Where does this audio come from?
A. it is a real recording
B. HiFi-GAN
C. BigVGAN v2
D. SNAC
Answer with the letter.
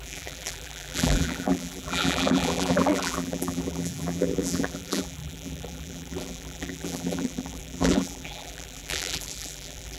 C